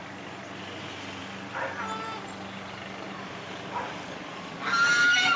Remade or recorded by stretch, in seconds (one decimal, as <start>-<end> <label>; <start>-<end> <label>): 0.0-5.4 recorded